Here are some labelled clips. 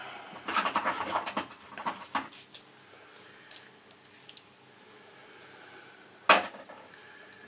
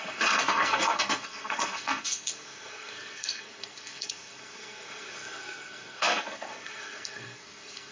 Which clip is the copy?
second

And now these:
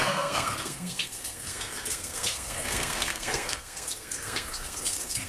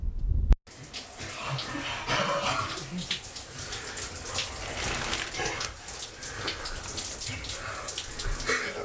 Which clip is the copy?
first